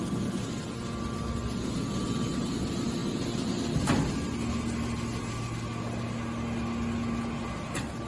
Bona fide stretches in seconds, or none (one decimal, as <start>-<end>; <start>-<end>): 0.0-8.1

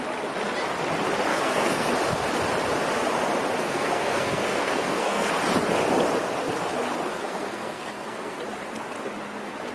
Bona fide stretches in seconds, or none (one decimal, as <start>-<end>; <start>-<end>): 0.0-1.3; 1.9-3.6; 5.3-7.1; 8.4-9.7

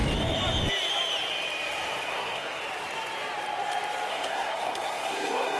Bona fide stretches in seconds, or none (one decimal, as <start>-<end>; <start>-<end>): 0.0-2.1; 2.6-4.1

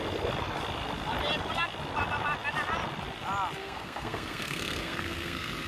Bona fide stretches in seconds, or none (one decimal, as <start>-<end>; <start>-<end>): 0.0-3.6